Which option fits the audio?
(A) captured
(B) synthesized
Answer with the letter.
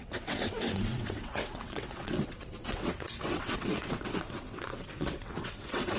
B